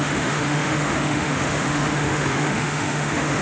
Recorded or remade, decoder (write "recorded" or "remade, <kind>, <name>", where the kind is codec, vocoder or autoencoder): remade, autoencoder, DAC-VAE